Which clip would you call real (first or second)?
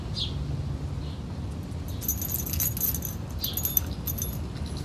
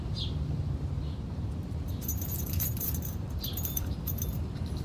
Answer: first